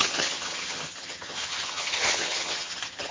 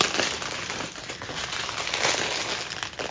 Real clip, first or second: second